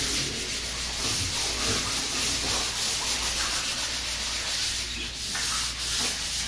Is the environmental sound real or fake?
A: real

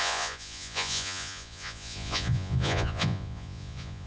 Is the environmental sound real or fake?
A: fake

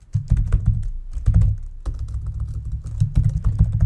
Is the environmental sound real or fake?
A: real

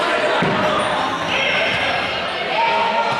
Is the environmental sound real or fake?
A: real